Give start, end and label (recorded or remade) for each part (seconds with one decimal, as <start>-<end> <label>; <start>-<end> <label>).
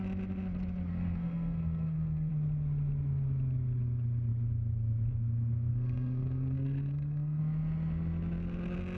0.0-0.9 recorded; 0.9-2.3 remade; 2.3-5.7 recorded; 5.7-7.4 remade; 7.4-9.0 recorded